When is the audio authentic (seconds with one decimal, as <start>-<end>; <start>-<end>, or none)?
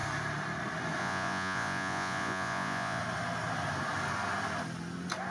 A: 0.0-1.0; 3.0-5.3